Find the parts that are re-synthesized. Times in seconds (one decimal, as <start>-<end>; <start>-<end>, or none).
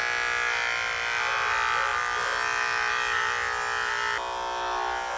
none